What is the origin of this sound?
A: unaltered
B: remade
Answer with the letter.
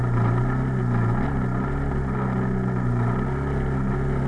A